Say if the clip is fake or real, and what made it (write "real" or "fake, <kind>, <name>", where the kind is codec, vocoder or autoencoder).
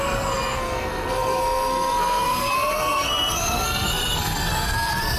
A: fake, codec, SNAC